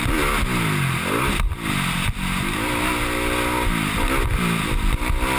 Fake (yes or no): no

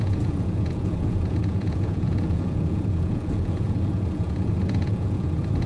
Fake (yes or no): yes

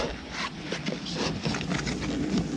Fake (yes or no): no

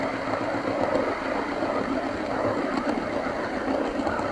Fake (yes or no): no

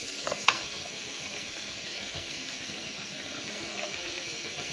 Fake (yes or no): yes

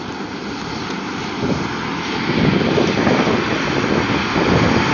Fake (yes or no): no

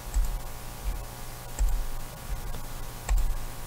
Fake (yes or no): no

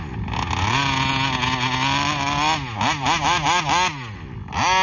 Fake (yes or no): no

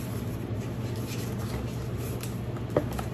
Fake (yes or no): no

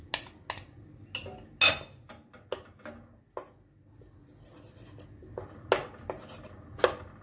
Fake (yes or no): no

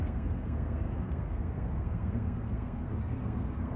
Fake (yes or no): yes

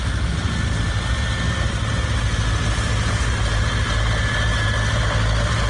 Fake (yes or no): no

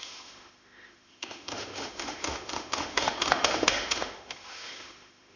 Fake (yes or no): yes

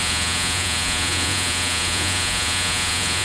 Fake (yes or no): yes